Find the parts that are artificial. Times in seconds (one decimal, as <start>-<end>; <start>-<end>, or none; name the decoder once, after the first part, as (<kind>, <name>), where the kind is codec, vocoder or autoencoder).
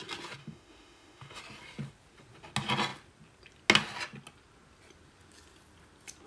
0.4-1.4 (autoencoder, DAC-VAE)